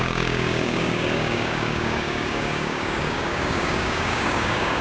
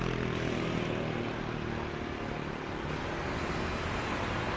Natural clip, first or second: second